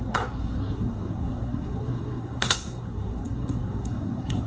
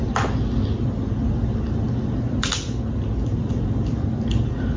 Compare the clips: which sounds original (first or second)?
second